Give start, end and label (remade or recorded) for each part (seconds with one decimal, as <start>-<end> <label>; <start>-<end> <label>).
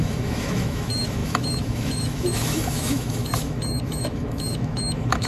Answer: 0.0-5.3 remade